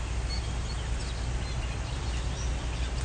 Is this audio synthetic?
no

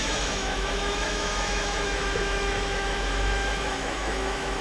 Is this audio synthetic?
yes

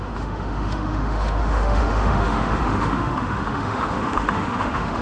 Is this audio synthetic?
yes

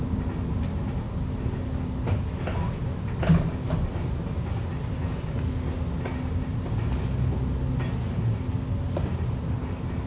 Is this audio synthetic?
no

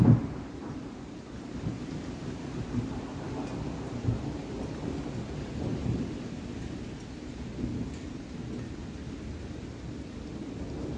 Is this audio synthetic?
no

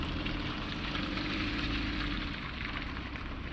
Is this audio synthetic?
no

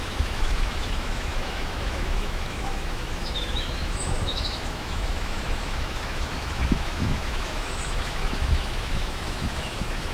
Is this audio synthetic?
yes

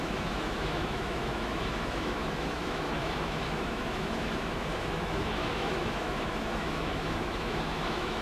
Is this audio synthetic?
yes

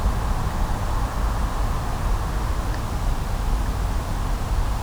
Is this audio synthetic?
no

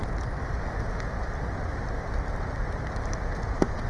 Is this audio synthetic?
no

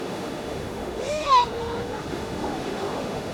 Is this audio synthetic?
yes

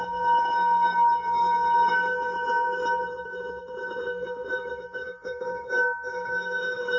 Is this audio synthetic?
yes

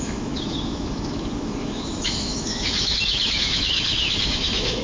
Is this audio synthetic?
yes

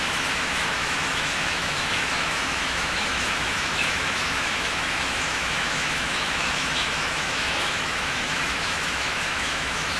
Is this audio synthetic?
yes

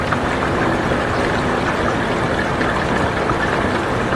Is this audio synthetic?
no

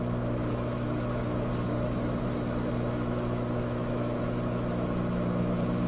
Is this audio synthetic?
yes